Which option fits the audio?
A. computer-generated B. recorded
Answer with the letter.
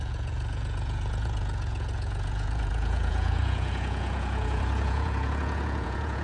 A